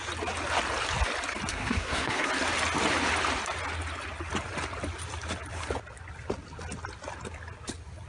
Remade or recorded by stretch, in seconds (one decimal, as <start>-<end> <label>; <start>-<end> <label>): 0.0-1.5 recorded; 1.5-2.3 remade; 2.3-8.1 recorded